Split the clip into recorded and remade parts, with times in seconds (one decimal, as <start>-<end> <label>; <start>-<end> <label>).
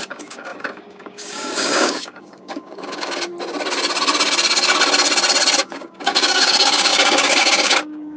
0.0-3.3 remade; 3.3-5.6 recorded; 5.6-8.2 remade